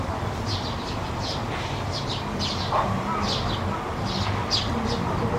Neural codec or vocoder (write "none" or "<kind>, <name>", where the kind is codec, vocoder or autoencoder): none